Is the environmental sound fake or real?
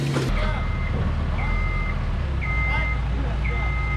real